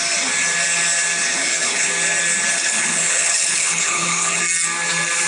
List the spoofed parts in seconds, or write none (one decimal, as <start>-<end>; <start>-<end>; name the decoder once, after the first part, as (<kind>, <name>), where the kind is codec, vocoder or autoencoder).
1.3-1.9 (codec, HILCodec); 2.5-4.4